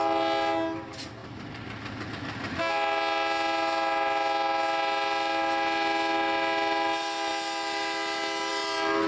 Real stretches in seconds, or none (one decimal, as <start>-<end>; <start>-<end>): 0.0-9.1